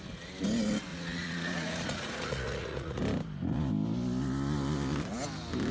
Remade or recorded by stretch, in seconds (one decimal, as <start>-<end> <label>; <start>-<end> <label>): 0.0-0.9 recorded; 0.9-3.0 remade; 3.0-5.7 recorded